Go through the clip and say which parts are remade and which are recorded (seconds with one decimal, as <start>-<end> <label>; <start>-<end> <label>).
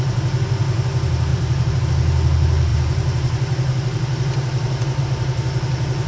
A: 0.0-1.3 recorded; 1.3-1.8 remade; 1.8-2.7 recorded; 2.7-5.0 remade; 5.0-6.1 recorded